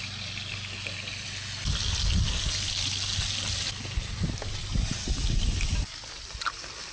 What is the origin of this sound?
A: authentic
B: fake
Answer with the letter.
A